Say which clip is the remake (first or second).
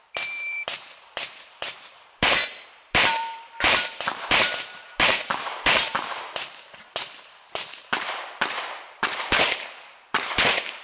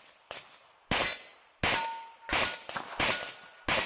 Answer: first